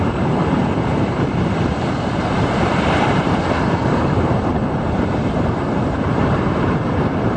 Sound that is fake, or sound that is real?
fake